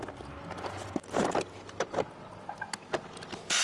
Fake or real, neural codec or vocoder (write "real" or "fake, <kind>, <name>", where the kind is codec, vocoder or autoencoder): real